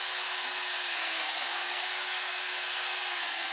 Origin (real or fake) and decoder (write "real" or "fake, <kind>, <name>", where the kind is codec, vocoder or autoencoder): fake, codec, SNAC